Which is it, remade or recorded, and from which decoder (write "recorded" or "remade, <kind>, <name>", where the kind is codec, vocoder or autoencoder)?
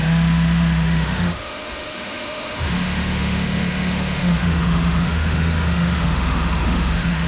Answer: remade, autoencoder, DAC-VAE